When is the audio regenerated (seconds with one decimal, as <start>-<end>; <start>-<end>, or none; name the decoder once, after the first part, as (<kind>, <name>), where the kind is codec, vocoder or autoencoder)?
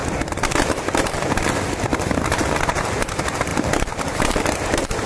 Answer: 0.0-3.1 (vocoder, BigVGAN v2); 3.5-4.4